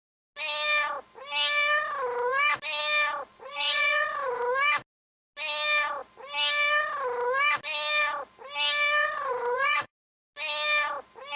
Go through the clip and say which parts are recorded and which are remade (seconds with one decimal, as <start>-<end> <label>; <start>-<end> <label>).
0.0-3.3 recorded; 3.3-4.4 remade; 4.4-9.0 recorded; 9.0-9.9 remade; 9.9-11.4 recorded